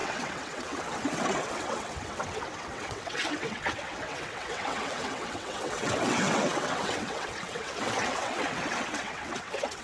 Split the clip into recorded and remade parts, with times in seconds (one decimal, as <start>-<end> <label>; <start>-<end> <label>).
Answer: 0.0-9.8 remade